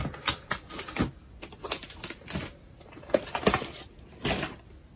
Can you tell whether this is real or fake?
real